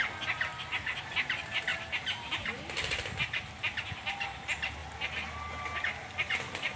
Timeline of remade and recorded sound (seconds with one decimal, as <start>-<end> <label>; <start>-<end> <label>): 0.0-6.8 recorded